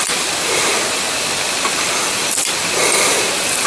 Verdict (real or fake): real